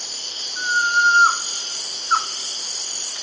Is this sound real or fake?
real